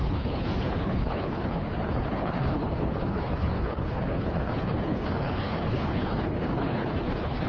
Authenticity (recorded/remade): remade